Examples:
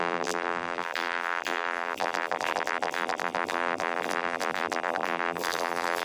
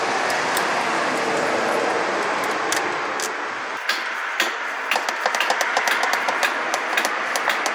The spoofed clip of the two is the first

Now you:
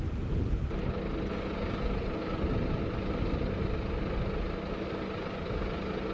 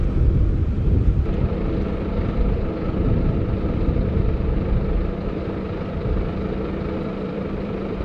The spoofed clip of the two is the second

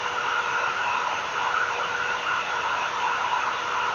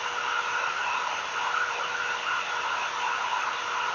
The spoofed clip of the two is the first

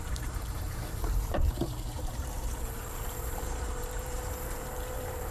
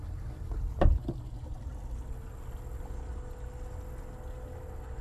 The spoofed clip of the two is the first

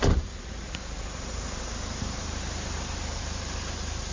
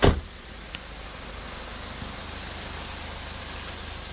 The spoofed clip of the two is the first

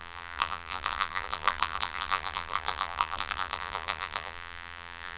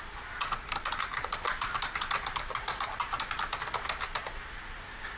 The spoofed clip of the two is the first